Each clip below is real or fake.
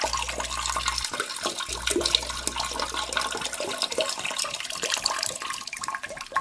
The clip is real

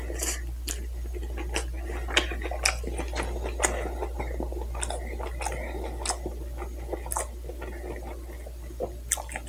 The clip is real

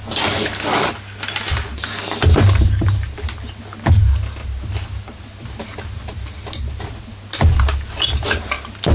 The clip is real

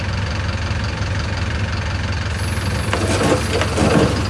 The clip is real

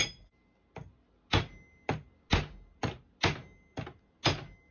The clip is real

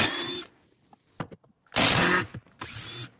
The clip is real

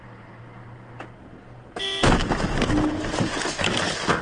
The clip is real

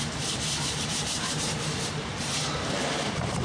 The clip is fake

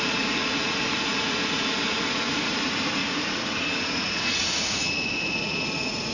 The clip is fake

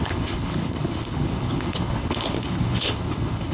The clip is fake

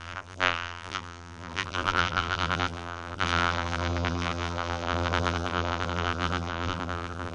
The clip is fake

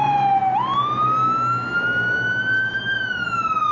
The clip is real